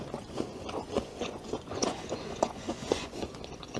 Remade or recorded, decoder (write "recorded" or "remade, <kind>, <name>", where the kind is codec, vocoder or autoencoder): remade, vocoder, Vocos